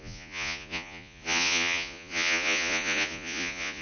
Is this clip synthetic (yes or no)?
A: yes